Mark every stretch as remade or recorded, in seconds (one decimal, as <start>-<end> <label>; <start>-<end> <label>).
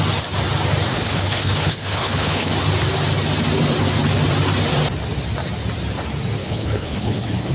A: 0.0-0.9 recorded; 0.9-2.5 remade; 2.5-6.4 recorded; 6.4-7.5 remade